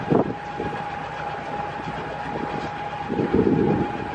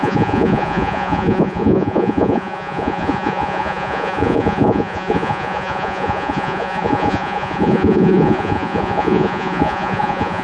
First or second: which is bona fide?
first